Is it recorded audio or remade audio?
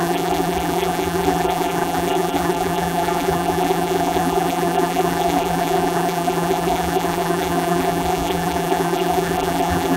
remade